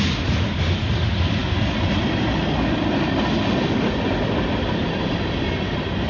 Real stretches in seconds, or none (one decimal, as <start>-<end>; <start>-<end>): 0.0-6.1